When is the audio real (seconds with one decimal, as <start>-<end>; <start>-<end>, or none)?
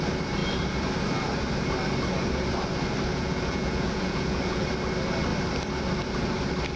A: 0.0-3.1; 4.6-6.8